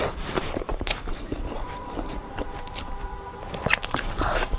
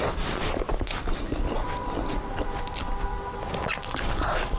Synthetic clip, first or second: first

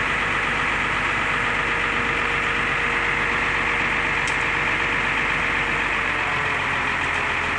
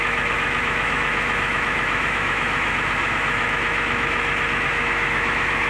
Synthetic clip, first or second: second